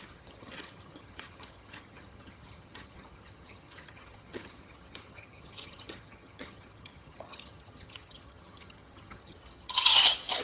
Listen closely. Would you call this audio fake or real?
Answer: fake